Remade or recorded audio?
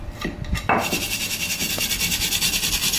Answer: recorded